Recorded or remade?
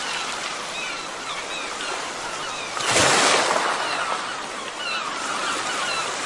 recorded